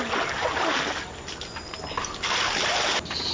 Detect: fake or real real